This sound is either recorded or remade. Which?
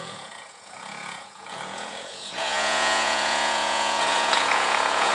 remade